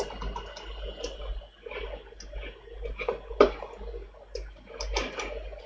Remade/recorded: recorded